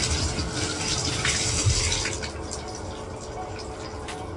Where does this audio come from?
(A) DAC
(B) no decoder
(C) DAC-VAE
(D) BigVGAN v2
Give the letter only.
B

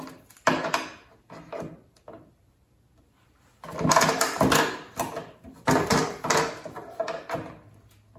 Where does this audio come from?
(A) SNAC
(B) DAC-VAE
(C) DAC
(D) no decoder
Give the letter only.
D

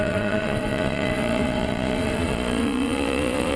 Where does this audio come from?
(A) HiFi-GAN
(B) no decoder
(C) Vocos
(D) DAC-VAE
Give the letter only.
C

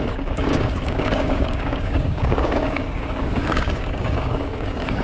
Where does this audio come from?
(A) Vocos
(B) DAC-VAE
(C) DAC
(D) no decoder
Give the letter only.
C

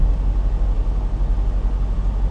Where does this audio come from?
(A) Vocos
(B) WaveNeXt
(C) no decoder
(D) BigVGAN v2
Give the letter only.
C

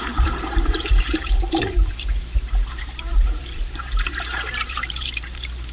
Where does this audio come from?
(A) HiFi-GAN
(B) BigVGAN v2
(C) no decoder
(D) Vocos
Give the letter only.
B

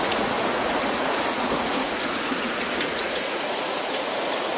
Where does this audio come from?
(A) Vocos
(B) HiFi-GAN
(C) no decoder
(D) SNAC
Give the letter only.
A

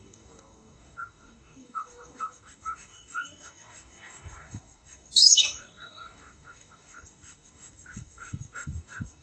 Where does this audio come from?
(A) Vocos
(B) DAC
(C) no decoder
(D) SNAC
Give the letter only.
B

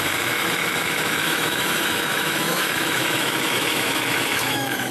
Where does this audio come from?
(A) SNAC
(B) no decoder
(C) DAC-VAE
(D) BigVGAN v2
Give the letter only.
C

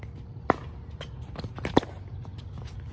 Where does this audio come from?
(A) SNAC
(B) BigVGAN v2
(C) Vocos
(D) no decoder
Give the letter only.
D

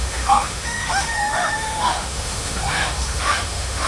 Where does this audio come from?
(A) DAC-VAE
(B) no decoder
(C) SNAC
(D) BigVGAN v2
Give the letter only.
A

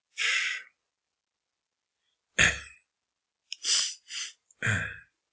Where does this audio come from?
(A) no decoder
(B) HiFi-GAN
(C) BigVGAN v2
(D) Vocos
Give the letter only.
A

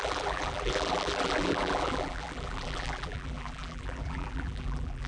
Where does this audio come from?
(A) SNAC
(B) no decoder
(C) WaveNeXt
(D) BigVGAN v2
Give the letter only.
D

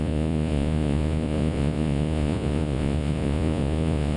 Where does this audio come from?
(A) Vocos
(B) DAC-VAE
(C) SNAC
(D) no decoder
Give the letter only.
A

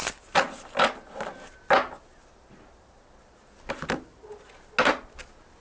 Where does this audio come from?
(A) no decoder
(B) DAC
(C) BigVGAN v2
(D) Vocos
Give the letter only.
A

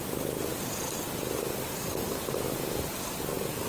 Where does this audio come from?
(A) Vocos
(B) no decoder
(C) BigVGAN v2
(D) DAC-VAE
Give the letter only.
B